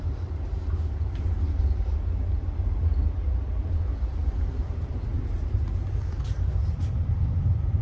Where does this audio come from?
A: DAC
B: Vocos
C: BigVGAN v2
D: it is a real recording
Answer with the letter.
C